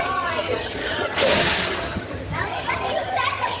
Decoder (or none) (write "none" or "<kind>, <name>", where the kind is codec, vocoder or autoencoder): vocoder, HiFi-GAN